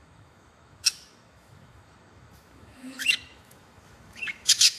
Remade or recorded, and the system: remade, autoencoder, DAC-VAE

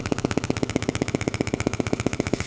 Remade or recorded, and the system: remade, autoencoder, DAC-VAE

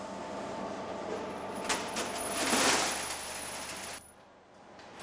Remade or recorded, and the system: recorded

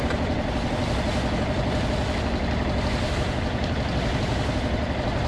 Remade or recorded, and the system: recorded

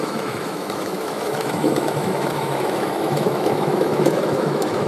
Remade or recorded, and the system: remade, autoencoder, DAC-VAE